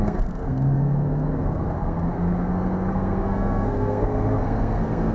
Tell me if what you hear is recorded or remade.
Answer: remade